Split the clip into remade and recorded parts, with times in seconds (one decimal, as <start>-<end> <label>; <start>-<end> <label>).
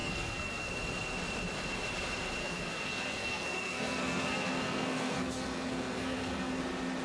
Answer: 0.0-0.7 remade; 0.7-2.4 recorded; 2.4-6.6 remade; 6.6-7.0 recorded